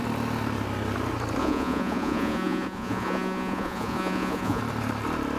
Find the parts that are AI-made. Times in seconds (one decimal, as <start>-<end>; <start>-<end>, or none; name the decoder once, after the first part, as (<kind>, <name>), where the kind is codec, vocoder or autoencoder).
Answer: 1.4-4.6 (vocoder, Vocos)